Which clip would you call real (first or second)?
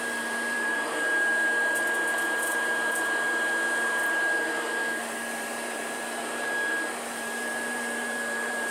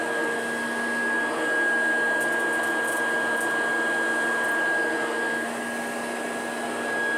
second